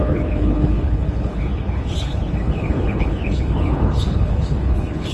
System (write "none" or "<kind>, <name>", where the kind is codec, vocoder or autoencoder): codec, HILCodec